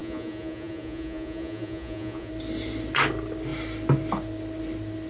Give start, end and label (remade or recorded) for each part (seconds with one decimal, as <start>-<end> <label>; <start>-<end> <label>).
0.0-2.3 remade; 2.3-5.1 recorded